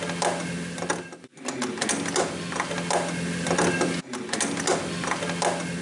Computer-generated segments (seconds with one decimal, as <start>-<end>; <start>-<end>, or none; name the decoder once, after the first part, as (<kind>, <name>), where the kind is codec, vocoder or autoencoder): none